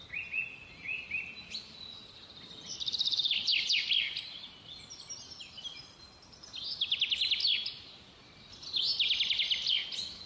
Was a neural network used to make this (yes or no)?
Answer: no